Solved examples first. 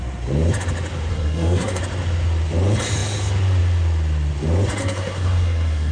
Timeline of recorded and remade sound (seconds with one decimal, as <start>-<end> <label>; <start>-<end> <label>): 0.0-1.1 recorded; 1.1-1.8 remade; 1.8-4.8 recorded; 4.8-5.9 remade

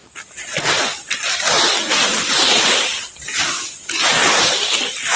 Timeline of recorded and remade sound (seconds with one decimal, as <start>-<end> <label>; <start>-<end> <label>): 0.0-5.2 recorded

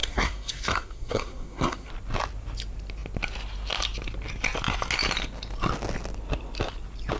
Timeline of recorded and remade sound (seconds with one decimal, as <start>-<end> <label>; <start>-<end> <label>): 0.0-1.9 remade; 1.9-7.2 recorded